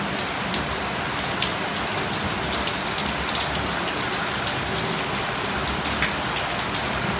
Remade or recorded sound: recorded